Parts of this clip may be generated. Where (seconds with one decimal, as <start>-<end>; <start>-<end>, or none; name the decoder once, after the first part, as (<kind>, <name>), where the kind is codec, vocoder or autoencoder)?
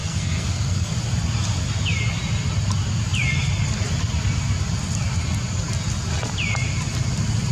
0.0-0.9 (codec, SNAC)